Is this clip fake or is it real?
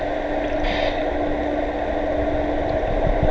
real